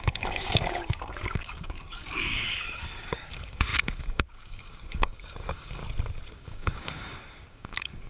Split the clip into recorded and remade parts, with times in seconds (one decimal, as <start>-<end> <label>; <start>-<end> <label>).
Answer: 0.0-5.8 remade; 5.8-6.3 recorded; 6.3-8.1 remade